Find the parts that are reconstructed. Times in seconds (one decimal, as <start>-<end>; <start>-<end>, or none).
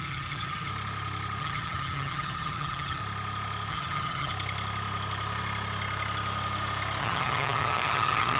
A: 0.0-0.7; 1.4-3.0; 3.7-4.3; 7.0-8.4